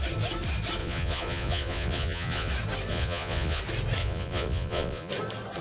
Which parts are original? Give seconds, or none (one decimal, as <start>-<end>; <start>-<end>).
0.0-0.8; 2.5-2.9; 3.6-4.0; 5.1-5.6